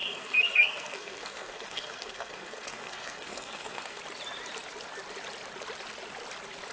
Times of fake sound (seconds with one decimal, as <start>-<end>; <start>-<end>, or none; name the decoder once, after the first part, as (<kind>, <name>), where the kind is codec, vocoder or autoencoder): 0.0-4.0 (codec, SNAC)